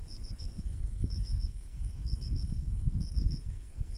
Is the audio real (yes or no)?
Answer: no